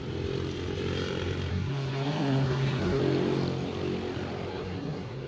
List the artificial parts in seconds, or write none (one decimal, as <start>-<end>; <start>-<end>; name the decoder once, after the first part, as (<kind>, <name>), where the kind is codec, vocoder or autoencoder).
1.5-3.0 (codec, SNAC); 4.5-5.3